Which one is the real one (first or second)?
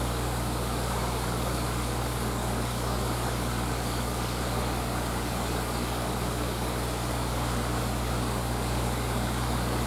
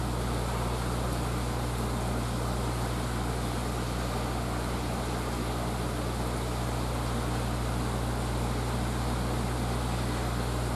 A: second